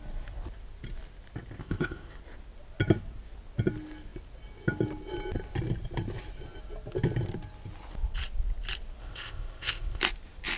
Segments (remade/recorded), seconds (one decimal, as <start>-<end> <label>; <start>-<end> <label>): 0.0-1.6 recorded; 1.6-2.2 remade; 2.2-9.0 recorded; 9.0-10.0 remade; 10.0-10.6 recorded